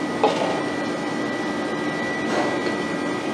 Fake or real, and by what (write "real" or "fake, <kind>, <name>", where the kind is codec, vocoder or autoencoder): real